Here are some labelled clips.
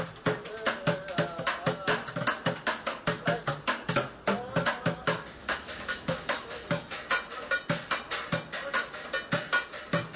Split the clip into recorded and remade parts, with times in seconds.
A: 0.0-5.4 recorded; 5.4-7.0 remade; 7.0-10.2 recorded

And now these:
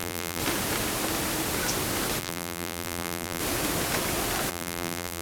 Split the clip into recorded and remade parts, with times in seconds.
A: 0.0-0.4 remade; 0.4-2.2 recorded; 2.2-3.4 remade; 3.4-4.5 recorded; 4.5-5.2 remade